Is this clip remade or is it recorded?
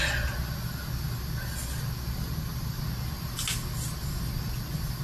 recorded